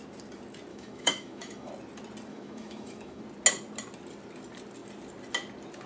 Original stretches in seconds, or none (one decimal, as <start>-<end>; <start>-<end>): 0.0-0.7; 1.7-2.3; 3.2-5.9